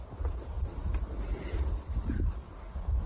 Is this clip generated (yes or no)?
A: no